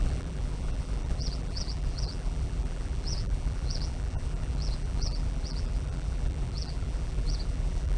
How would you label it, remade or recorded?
remade